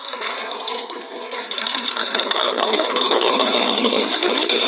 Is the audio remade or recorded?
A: remade